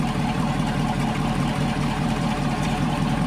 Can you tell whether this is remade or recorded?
remade